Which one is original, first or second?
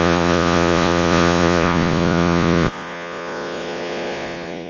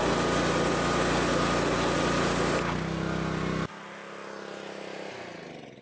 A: second